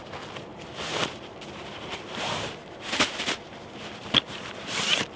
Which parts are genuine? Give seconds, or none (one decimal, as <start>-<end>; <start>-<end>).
0.0-0.5; 3.6-4.0; 4.7-5.2

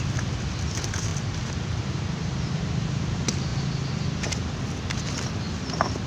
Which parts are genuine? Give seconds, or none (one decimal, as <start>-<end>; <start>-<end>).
0.0-1.1; 2.6-6.1

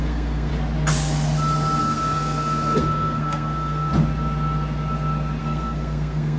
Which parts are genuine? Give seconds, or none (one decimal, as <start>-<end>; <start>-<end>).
0.5-1.8; 3.9-5.4

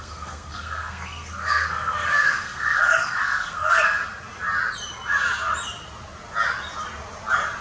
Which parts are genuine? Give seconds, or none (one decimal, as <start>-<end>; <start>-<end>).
4.0-7.6

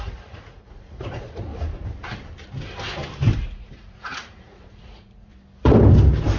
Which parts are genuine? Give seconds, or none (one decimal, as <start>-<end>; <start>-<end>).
1.5-3.6; 5.3-6.4

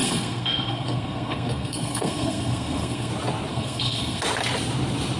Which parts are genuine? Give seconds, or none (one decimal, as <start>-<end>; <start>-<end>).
3.1-3.5; 4.2-5.2

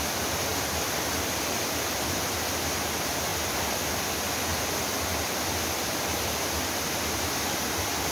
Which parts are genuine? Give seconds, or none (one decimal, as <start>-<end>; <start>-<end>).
0.0-8.1